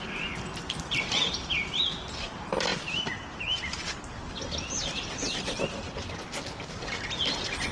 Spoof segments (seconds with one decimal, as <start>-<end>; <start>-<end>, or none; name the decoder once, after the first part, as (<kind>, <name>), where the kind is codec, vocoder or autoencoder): none